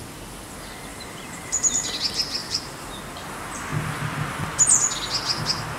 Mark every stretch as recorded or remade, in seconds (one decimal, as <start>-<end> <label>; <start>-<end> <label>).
0.0-0.9 recorded; 0.9-1.9 remade; 1.9-2.4 recorded; 2.4-2.9 remade; 2.9-5.8 recorded